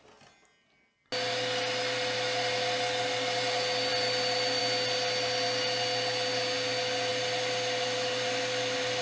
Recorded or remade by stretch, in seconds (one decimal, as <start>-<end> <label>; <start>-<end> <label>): 0.0-3.9 recorded; 3.9-4.6 remade; 4.6-7.1 recorded; 7.1-9.0 remade